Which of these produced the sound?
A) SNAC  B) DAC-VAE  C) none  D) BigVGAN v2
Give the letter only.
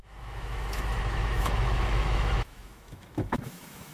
B